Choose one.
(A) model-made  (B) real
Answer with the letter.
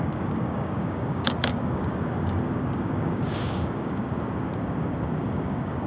A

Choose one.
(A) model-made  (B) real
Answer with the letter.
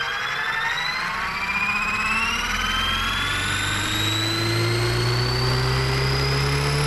B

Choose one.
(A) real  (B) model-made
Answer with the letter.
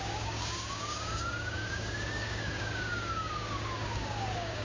B